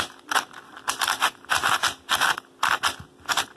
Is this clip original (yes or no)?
yes